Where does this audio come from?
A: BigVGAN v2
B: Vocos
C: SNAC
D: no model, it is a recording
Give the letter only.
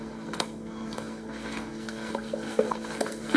C